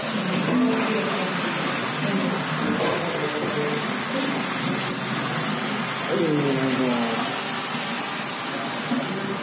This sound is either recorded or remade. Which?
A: recorded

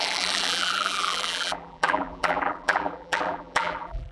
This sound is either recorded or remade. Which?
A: remade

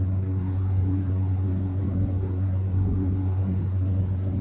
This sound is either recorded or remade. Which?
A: remade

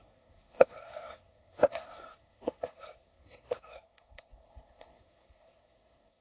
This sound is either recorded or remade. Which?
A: remade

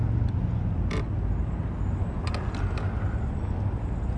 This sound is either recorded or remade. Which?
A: recorded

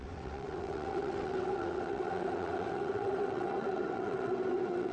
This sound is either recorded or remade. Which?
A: remade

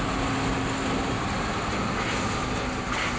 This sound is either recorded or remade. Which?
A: recorded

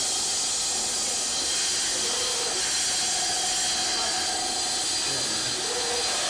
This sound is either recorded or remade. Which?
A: recorded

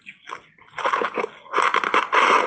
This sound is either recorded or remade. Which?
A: recorded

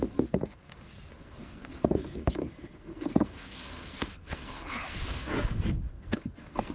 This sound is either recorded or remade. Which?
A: remade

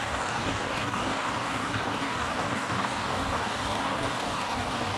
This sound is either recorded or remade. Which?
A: remade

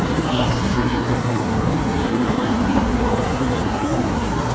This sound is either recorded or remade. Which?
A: remade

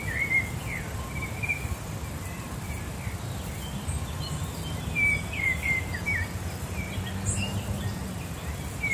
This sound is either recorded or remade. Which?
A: recorded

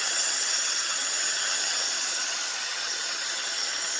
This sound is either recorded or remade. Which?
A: remade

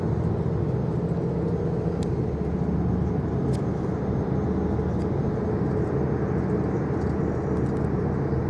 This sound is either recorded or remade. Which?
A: recorded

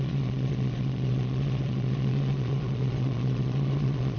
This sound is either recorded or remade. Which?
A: remade